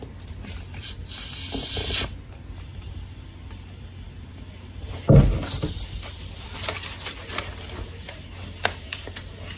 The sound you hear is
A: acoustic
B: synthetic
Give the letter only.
A